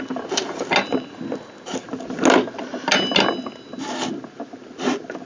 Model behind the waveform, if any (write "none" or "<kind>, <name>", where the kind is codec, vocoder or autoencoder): none